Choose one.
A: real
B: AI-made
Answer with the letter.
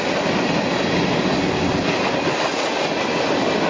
A